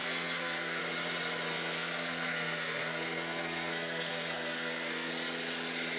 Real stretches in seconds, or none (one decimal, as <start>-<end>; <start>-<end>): 0.8-1.5; 5.1-6.0